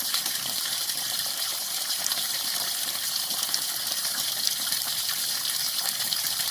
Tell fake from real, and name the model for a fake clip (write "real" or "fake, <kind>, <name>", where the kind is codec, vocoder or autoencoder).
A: fake, vocoder, BigVGAN v2